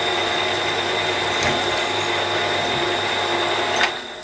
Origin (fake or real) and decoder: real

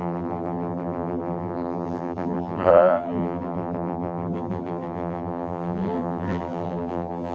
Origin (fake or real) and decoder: fake, vocoder, BigVGAN v2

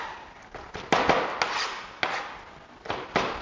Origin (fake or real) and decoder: real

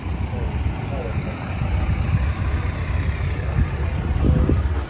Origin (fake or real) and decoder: real